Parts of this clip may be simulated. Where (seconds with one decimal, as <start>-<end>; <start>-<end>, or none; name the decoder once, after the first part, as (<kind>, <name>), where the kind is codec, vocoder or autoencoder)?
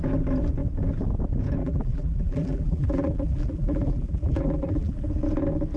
1.6-5.1 (vocoder, BigVGAN v2)